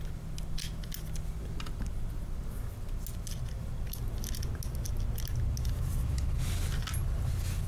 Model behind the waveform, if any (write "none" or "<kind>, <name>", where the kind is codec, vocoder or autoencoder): none